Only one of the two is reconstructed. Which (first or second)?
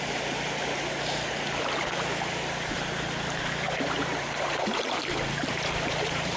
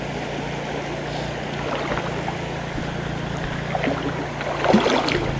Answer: first